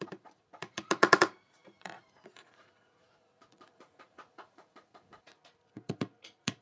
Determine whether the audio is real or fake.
fake